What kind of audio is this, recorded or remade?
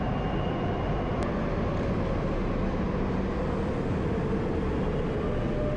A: recorded